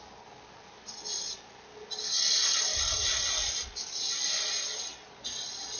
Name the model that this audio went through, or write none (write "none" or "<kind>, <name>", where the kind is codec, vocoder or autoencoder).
none